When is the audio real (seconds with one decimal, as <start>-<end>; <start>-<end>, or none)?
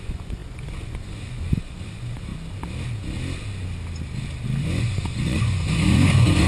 2.3-4.6